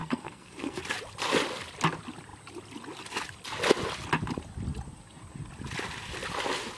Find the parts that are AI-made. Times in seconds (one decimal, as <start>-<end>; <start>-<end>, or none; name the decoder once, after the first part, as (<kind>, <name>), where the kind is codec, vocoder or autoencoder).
0.0-0.8 (codec, SNAC)